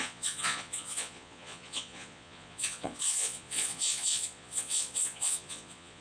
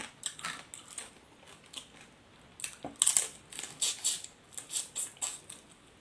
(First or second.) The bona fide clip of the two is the second